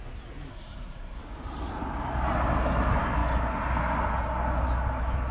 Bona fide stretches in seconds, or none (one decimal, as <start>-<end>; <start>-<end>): 0.0-0.5; 1.2-5.3